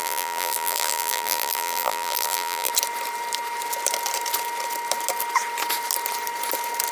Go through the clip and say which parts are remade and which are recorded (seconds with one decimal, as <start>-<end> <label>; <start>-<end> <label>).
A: 0.0-2.7 remade; 2.7-6.9 recorded